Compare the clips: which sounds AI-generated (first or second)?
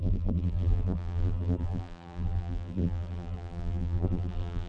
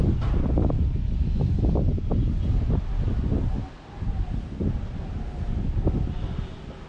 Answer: first